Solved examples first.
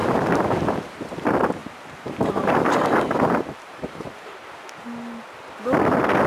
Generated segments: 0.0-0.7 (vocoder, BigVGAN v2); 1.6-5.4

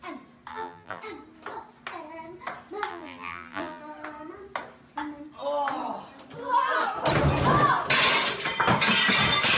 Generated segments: 0.5-1.0 (vocoder, BigVGAN v2); 2.9-3.8

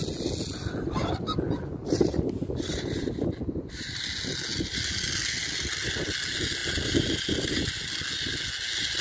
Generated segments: 1.8-3.3 (vocoder, BigVGAN v2)

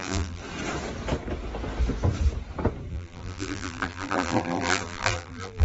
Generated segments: 0.0-0.4 (vocoder, BigVGAN v2); 2.9-5.6

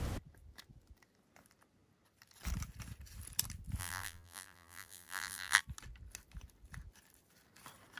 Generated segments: 3.8-5.6 (vocoder, BigVGAN v2)

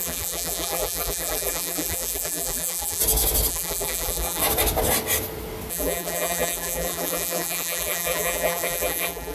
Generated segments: 0.0-3.0 (vocoder, BigVGAN v2); 3.5-4.4; 5.7-9.3

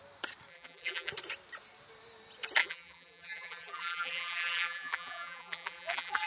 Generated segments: 0.5-1.1 (vocoder, BigVGAN v2); 2.6-6.3

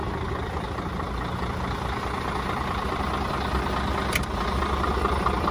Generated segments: none